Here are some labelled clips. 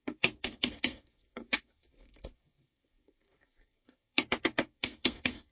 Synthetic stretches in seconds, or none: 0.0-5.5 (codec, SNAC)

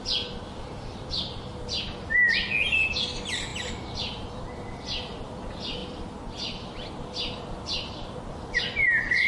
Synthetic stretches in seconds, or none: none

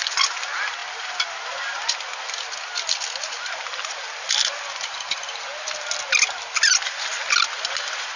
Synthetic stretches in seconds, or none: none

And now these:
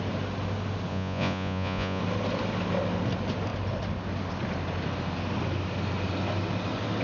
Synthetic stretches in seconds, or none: 0.9-2.0 (vocoder, Vocos)

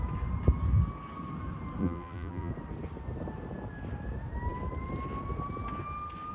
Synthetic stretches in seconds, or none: 1.8-2.5 (vocoder, BigVGAN v2)

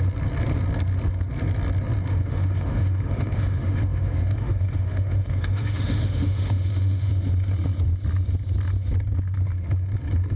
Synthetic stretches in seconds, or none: 2.1-7.1 (autoencoder, DAC-VAE)